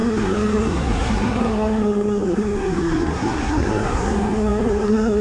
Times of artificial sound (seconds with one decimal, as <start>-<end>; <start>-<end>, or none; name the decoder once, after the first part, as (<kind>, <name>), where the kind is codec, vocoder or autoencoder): 0.0-5.2 (codec, SNAC)